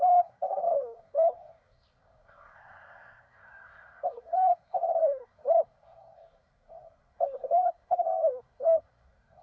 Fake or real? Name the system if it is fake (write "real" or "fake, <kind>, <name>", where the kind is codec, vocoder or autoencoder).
fake, codec, SNAC